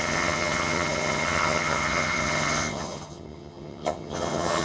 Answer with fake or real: fake